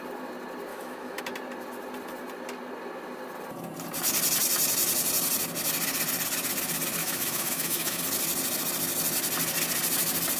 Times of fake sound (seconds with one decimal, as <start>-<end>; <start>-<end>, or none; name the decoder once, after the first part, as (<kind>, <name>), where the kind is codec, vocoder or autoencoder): 0.7-1.2 (autoencoder, DAC-VAE); 7.0-8.0